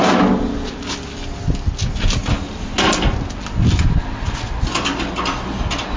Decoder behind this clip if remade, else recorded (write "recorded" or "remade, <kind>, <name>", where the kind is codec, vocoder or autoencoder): recorded